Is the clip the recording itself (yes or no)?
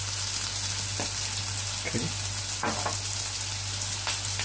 yes